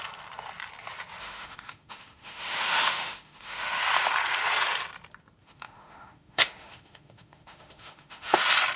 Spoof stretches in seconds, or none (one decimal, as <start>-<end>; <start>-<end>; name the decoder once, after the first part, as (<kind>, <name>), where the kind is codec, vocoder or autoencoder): 1.2-3.8 (autoencoder, DAC-VAE); 5.4-8.4